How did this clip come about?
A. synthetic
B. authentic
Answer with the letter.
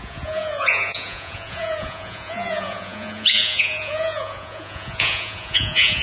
A